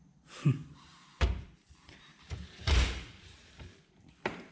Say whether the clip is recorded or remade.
remade